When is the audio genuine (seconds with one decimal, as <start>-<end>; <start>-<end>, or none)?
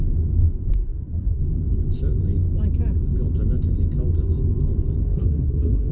0.0-0.8; 1.4-5.0